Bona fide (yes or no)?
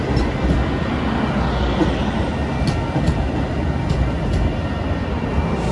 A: yes